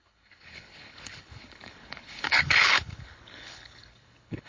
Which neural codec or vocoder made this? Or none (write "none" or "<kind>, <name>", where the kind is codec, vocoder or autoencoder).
codec, HILCodec